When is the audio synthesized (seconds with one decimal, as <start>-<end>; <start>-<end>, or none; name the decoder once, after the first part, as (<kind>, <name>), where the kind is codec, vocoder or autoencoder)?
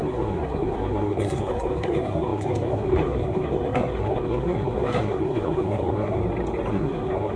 0.0-6.2 (codec, SNAC); 6.7-7.4